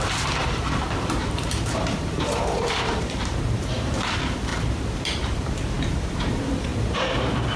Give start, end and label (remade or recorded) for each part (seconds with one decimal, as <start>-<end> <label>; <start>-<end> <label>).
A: 0.0-6.7 remade; 6.7-7.6 recorded